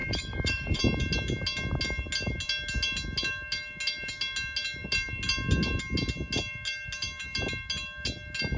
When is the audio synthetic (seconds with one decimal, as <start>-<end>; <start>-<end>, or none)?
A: 0.0-0.8